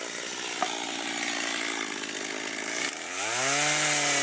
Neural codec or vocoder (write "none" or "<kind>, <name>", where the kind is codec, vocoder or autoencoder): none